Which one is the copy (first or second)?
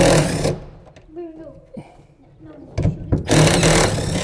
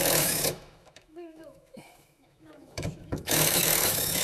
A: second